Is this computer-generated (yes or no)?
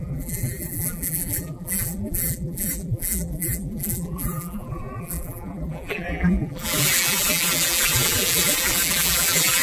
yes